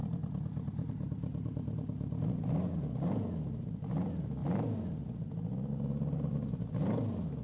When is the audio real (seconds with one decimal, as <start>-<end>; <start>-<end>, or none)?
0.0-7.4

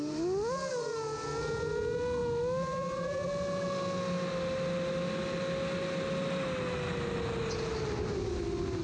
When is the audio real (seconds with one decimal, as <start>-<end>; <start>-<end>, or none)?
0.0-8.8

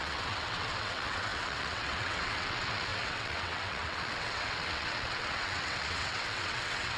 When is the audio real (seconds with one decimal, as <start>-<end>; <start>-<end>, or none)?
none

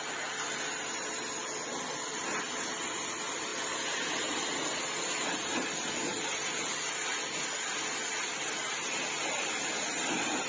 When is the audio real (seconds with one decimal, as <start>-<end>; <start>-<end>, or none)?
0.0-10.5

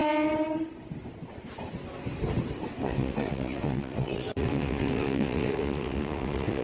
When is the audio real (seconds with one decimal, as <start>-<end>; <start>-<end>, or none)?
0.0-2.7

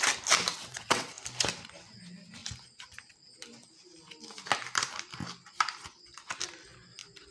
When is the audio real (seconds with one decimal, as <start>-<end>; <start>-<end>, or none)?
0.0-0.5; 1.1-7.3